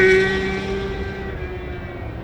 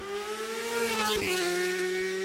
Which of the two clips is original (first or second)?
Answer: first